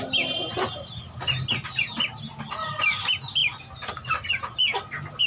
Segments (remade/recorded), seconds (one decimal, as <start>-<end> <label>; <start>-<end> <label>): 0.0-5.3 recorded